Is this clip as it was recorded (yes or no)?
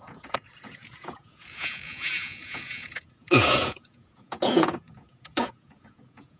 no